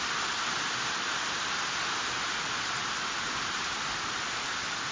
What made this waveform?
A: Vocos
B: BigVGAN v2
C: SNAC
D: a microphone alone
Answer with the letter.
D